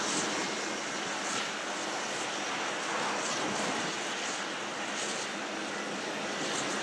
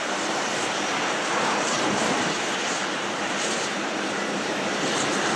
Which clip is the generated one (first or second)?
second